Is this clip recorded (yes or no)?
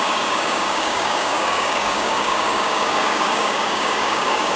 no